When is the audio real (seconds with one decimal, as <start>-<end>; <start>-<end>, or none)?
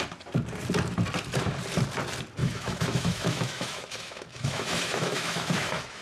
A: 0.0-2.4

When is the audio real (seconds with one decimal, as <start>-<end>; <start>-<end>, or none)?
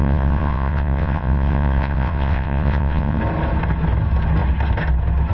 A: 3.2-5.3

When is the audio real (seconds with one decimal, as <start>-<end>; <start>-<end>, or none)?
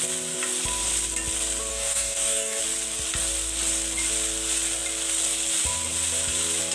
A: 0.0-1.7; 2.6-6.7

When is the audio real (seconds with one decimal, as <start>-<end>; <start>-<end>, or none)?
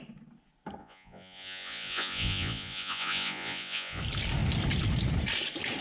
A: 0.0-0.8; 4.0-5.8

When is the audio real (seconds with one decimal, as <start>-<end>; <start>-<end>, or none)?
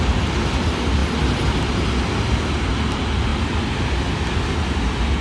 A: 0.0-5.2